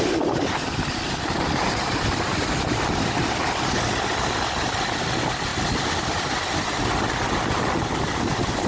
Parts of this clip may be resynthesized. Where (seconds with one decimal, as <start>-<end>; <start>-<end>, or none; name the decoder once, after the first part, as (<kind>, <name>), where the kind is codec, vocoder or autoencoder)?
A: none